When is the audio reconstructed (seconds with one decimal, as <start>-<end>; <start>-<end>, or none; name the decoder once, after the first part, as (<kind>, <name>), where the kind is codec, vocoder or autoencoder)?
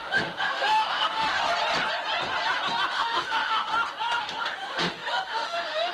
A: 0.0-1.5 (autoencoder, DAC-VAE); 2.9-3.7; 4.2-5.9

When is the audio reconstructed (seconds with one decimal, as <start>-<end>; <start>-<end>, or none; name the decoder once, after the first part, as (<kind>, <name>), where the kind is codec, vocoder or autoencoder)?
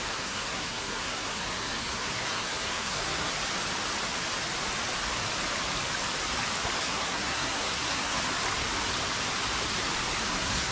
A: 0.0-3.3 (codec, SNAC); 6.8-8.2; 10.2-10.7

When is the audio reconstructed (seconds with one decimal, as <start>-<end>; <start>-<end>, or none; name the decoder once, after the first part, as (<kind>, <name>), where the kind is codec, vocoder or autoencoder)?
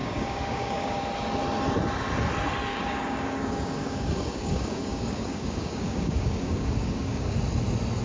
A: 0.0-1.0 (codec, DAC); 2.7-7.4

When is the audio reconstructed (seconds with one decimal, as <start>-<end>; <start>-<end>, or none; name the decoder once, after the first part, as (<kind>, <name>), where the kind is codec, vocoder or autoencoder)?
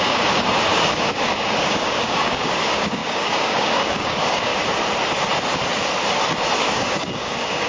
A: 0.0-4.5 (codec, DAC); 6.6-7.7